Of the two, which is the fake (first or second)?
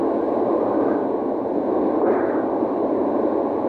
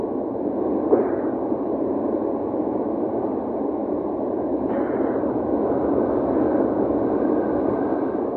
second